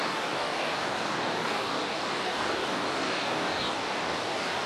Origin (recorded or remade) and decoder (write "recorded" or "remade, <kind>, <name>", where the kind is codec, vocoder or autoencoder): remade, codec, DAC